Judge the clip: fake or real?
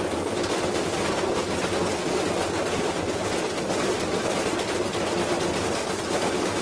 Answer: real